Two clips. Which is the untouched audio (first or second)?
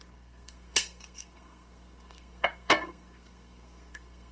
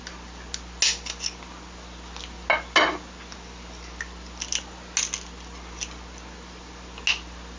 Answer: second